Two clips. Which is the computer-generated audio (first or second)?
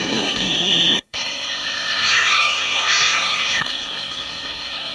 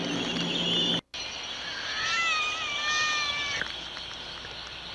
first